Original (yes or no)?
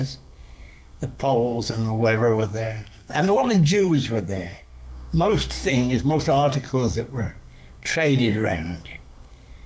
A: no